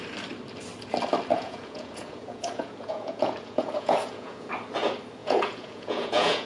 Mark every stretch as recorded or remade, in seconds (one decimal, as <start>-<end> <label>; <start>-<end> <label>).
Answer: 0.0-1.3 recorded; 1.3-4.5 remade; 4.5-5.2 recorded; 5.2-6.5 remade